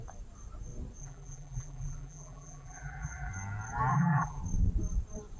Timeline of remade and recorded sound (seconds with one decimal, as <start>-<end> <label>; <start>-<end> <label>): 0.0-1.0 recorded; 1.0-3.3 remade; 3.3-3.9 recorded; 3.9-4.4 remade; 4.4-5.4 recorded